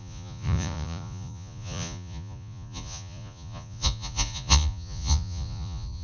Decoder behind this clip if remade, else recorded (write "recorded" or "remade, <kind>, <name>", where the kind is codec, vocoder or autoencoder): remade, vocoder, Vocos